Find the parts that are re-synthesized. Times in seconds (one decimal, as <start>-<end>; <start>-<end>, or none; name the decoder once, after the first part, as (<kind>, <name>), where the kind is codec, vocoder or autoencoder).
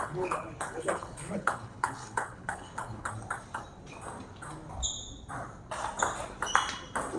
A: 0.0-3.1 (codec, HILCodec)